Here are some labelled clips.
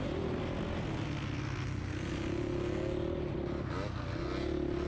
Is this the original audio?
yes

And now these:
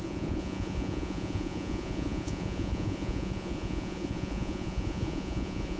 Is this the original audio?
no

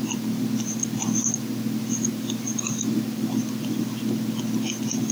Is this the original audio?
yes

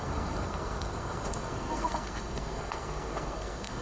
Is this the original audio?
no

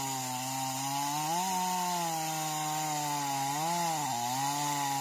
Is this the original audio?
yes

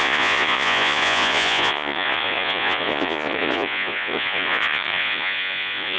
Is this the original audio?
no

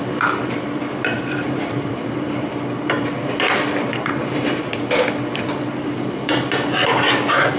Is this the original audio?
no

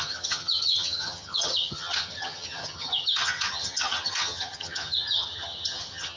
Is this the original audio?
no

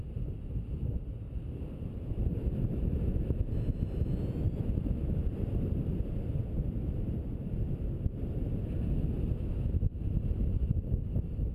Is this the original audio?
yes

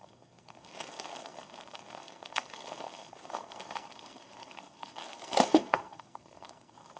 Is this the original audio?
no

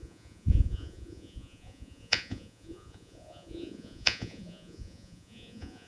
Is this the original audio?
no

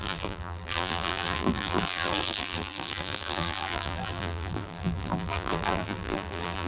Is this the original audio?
no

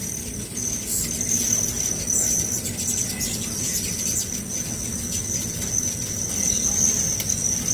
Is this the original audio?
yes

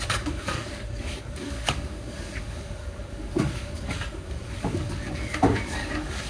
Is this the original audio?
no